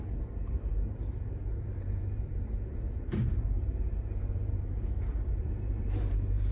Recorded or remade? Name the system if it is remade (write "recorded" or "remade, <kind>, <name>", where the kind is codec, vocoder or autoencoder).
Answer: remade, vocoder, BigVGAN v2